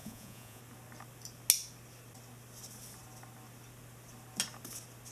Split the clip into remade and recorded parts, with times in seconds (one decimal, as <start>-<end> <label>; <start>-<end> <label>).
0.0-0.6 remade; 0.6-5.1 recorded